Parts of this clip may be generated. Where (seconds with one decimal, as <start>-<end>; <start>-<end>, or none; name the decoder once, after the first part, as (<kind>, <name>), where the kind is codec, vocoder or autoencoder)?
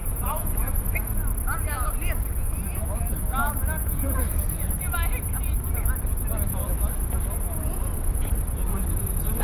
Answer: 0.0-0.7 (vocoder, Vocos); 3.8-4.3